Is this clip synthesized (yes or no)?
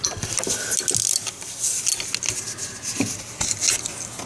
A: no